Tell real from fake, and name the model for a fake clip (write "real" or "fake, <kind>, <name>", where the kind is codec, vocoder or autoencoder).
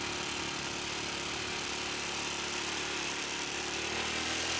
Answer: real